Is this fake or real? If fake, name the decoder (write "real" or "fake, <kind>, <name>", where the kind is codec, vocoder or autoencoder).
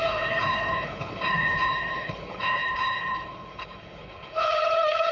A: fake, codec, HILCodec